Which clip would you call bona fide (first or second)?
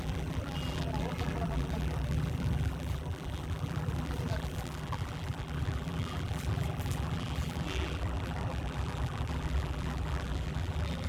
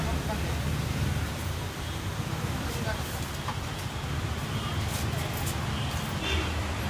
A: second